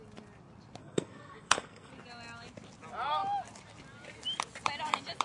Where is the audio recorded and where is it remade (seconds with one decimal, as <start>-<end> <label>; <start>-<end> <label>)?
0.0-0.8 recorded; 0.8-1.9 remade; 1.9-5.2 recorded